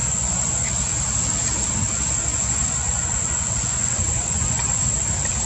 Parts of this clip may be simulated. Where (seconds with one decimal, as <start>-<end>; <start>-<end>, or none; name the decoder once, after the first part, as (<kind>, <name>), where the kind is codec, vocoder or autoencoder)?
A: 0.0-0.5 (vocoder, Vocos); 2.3-4.9